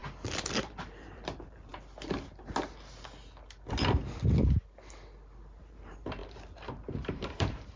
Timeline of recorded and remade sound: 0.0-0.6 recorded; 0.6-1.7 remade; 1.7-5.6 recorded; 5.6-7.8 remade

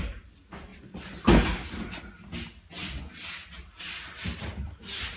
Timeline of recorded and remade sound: 0.0-5.2 recorded

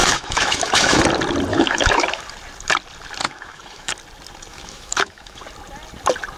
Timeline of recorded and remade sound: 0.0-1.0 remade; 1.0-1.5 recorded; 1.5-2.2 remade; 2.2-3.2 recorded; 3.2-3.9 remade; 3.9-4.5 recorded; 4.5-5.4 remade; 5.4-6.4 recorded

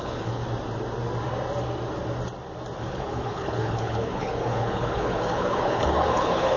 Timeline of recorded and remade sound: 0.0-0.4 remade; 0.4-2.8 recorded; 2.8-6.6 remade